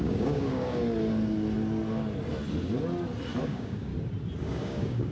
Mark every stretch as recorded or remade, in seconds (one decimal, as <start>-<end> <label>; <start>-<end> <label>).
0.0-0.8 remade; 0.8-3.4 recorded; 3.4-3.9 remade; 3.9-4.4 recorded; 4.4-5.1 remade